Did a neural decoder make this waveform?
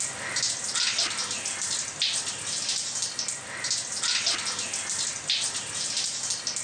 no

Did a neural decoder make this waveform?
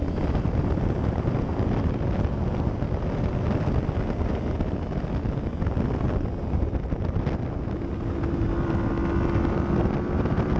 no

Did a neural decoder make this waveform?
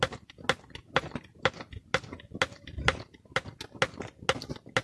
no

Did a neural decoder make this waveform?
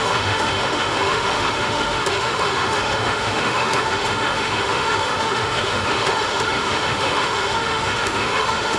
yes